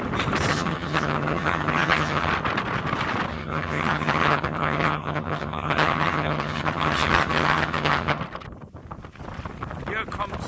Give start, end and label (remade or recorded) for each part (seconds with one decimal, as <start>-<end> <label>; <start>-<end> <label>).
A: 0.0-0.5 recorded; 0.5-2.3 remade; 2.3-3.3 recorded; 3.3-8.2 remade; 8.2-10.5 recorded